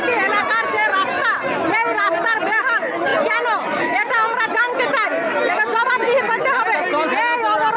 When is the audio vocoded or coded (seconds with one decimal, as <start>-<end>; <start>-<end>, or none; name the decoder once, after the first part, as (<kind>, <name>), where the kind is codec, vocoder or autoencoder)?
none